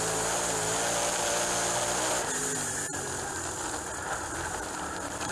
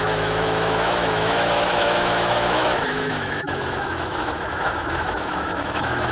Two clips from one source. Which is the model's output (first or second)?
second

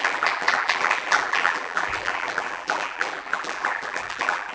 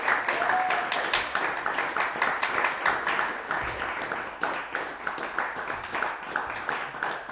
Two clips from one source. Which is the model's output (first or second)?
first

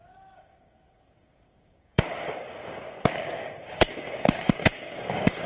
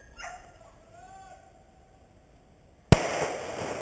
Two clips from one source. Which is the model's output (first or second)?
first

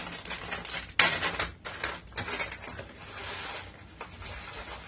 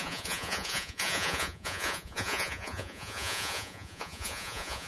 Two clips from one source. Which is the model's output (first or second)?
second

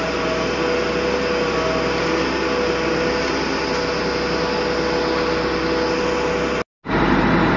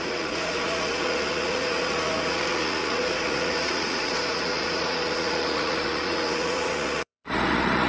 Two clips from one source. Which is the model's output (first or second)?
second